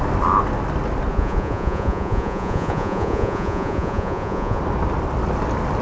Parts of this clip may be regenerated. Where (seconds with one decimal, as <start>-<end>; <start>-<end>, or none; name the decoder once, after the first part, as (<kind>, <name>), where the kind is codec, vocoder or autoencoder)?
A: 1.1-4.6 (vocoder, Vocos)